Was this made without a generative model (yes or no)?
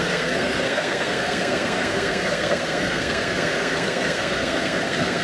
no